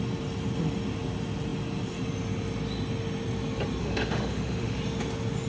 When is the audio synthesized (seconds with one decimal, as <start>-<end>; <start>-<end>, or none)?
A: 3.8-4.8